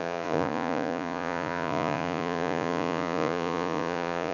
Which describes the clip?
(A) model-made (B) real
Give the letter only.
A